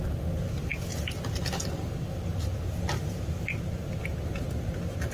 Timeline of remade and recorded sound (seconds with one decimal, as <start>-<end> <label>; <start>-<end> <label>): 0.0-5.1 recorded